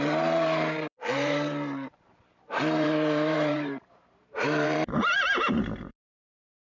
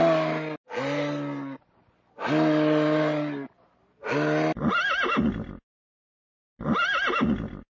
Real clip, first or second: second